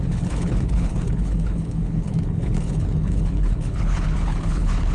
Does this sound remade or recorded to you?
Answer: remade